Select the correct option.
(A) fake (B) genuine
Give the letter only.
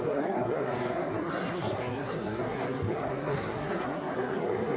A